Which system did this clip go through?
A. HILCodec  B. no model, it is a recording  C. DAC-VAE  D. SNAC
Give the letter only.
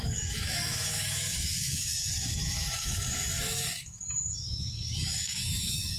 C